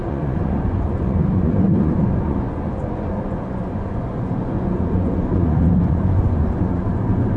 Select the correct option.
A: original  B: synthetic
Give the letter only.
B